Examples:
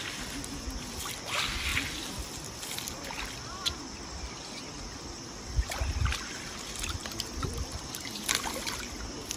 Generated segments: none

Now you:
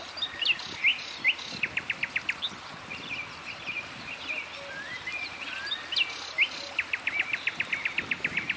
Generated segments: none

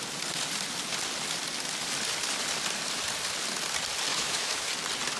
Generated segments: 4.1-4.7 (autoencoder, DAC-VAE)

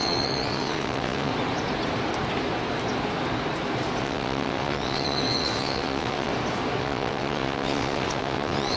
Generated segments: 0.0-1.3 (vocoder, WaveNeXt); 4.0-6.3; 6.8-8.8

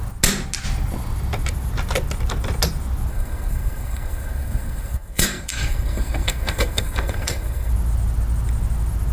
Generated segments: 3.1-7.7 (codec, SNAC)